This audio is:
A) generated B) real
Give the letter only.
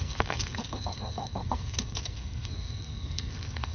A